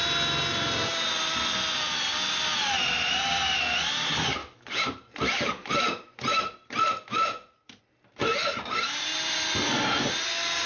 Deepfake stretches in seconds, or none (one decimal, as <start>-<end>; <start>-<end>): 4.4-7.8